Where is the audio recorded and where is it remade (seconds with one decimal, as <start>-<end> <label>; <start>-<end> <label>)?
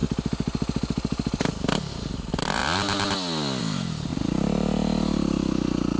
0.0-1.9 recorded; 1.9-2.6 remade; 2.6-3.6 recorded; 3.6-4.1 remade; 4.1-6.0 recorded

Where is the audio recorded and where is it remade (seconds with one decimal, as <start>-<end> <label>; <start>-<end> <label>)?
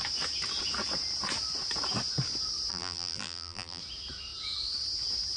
0.0-2.7 recorded; 2.7-3.8 remade; 3.8-5.4 recorded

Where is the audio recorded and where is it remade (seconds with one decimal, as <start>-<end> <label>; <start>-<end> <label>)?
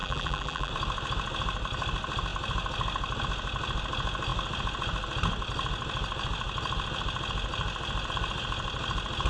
0.0-0.7 remade; 0.7-9.3 recorded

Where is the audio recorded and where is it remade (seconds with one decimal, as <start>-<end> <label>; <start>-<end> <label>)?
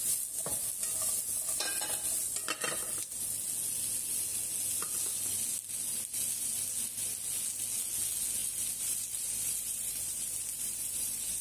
0.0-8.4 recorded; 8.4-11.4 remade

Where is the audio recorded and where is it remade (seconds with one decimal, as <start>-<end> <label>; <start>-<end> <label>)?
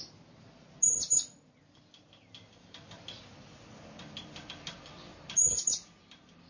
0.0-6.5 recorded